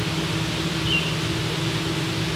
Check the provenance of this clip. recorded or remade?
recorded